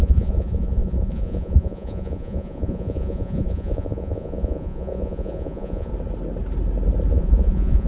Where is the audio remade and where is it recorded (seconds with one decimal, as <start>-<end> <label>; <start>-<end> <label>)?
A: 0.0-5.9 remade; 5.9-7.1 recorded; 7.1-7.9 remade

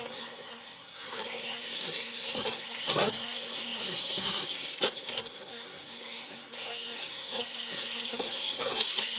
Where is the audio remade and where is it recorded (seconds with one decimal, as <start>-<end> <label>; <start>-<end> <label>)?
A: 0.0-9.2 remade

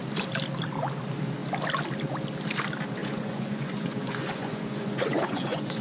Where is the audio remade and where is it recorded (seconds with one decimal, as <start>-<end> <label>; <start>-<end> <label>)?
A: 0.0-3.0 recorded; 3.0-5.8 remade

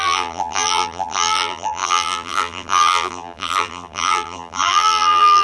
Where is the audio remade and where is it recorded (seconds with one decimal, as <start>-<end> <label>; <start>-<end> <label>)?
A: 0.0-5.4 remade